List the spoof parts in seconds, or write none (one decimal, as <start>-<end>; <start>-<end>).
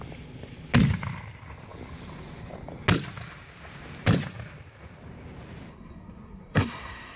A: 5.7-7.2